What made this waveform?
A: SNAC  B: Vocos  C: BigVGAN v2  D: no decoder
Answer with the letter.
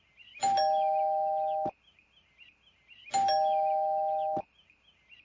D